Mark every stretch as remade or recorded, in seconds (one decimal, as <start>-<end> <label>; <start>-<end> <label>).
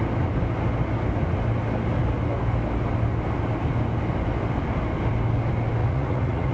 0.0-5.8 recorded; 5.8-6.5 remade